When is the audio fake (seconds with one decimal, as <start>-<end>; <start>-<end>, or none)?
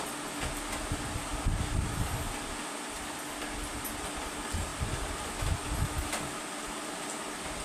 none